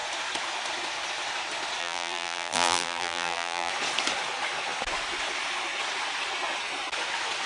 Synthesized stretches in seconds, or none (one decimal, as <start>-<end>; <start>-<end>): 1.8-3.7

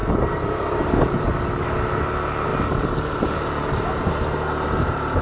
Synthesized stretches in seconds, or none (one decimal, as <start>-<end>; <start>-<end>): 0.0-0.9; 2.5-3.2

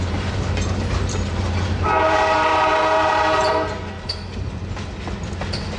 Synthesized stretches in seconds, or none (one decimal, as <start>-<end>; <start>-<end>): 0.0-3.5

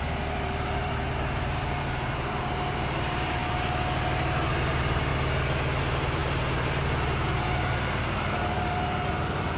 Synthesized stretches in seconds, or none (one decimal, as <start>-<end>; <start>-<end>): 0.0-3.4; 4.5-5.1; 5.8-9.6